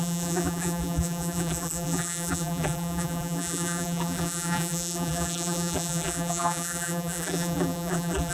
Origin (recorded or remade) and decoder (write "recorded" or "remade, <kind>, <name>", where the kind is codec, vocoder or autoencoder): remade, vocoder, BigVGAN v2